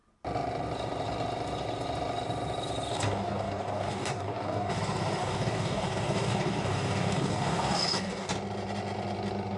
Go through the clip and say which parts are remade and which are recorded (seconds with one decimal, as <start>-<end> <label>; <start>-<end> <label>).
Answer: 0.0-2.9 recorded; 2.9-4.8 remade; 4.8-5.2 recorded; 5.2-8.3 remade; 8.3-9.6 recorded